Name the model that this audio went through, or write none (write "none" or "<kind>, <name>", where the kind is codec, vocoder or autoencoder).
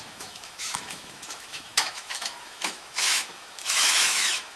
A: autoencoder, DAC-VAE